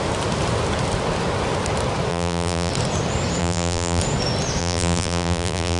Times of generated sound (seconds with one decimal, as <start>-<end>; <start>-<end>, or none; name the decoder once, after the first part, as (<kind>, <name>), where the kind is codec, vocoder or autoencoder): 2.1-2.7 (vocoder, BigVGAN v2); 3.4-4.0; 4.6-5.8